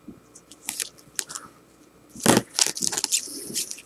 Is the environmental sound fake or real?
real